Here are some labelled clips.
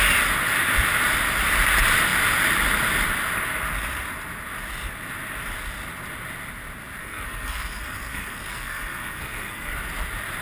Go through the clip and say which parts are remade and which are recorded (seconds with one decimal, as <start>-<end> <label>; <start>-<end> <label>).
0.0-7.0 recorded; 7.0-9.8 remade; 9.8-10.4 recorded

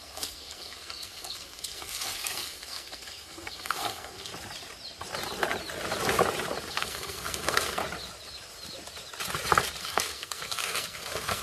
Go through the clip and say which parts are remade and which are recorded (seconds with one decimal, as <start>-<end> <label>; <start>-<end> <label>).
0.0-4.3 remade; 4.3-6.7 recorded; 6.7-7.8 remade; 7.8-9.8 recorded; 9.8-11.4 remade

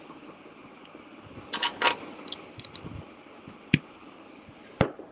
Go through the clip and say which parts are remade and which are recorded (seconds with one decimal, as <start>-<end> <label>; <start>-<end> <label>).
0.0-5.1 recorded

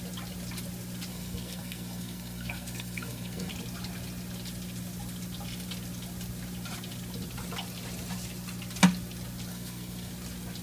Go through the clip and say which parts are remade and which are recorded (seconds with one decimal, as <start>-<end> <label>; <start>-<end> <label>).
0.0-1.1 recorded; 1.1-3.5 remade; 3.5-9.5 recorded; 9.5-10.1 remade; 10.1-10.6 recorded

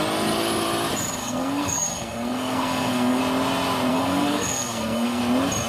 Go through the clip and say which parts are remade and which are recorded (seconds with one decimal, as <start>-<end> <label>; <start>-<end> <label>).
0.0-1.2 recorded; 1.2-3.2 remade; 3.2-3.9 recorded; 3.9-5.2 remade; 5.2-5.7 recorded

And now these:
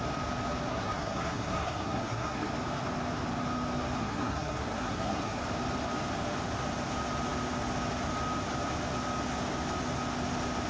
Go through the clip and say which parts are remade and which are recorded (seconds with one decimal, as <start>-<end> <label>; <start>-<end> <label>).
0.0-0.7 recorded; 0.7-2.5 remade; 2.5-4.0 recorded; 4.0-5.4 remade; 5.4-10.7 recorded

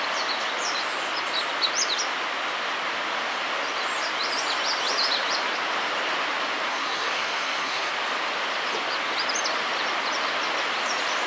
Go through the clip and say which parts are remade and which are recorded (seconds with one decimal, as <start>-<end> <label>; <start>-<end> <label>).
0.0-6.7 recorded; 6.7-7.9 remade; 7.9-11.3 recorded